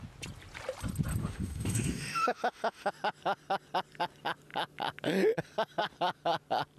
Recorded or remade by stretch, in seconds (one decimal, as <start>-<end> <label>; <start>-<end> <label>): 0.0-1.2 recorded; 1.2-2.9 remade; 2.9-6.8 recorded